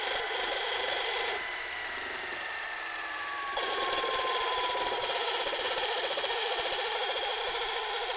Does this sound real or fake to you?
fake